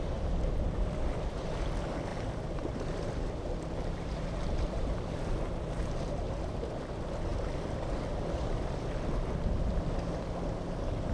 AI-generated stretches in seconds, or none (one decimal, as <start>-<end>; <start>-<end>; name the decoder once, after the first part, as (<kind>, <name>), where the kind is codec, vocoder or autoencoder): 2.1-6.8 (vocoder, BigVGAN v2)